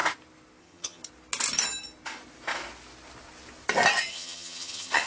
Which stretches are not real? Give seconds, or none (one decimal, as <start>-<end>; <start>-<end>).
0.6-1.0; 4.1-5.1